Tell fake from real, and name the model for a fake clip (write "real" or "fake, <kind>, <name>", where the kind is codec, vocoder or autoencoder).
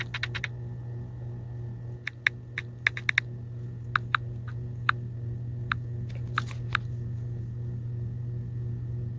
real